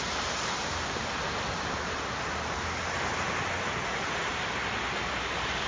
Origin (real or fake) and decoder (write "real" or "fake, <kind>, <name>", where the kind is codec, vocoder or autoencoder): real